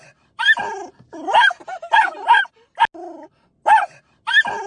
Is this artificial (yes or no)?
no